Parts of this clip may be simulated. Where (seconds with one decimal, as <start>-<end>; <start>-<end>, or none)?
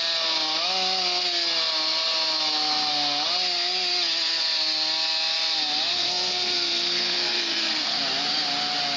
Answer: 5.9-8.0